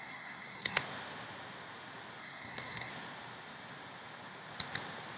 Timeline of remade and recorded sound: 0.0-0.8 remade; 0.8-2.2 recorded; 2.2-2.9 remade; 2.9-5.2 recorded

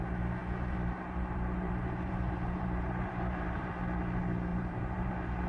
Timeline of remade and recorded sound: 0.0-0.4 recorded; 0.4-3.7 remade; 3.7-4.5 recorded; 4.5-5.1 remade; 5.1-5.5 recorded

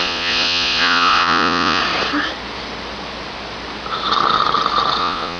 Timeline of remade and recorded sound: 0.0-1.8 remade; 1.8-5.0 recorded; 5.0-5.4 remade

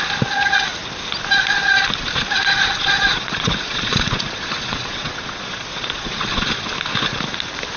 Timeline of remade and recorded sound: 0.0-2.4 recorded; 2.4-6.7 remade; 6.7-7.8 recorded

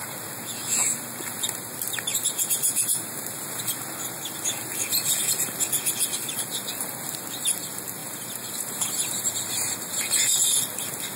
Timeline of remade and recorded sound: 0.0-2.1 recorded; 2.1-3.6 remade; 3.6-8.0 recorded; 8.0-9.3 remade; 9.3-11.2 recorded

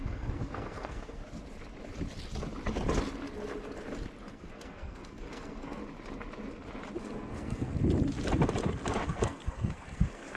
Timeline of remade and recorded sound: 0.0-1.2 remade; 1.2-4.3 recorded; 4.3-5.8 remade; 5.8-7.0 recorded; 7.0-7.7 remade; 7.7-9.0 recorded; 9.0-10.4 remade

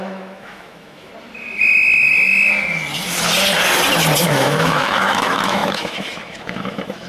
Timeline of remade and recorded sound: 0.0-1.1 remade; 1.1-4.2 recorded; 4.2-7.1 remade